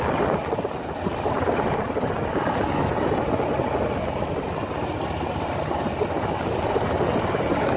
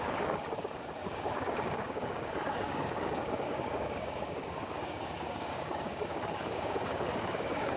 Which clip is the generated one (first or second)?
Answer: second